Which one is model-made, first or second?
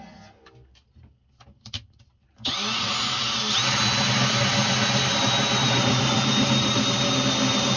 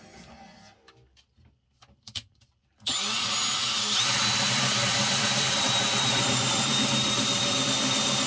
second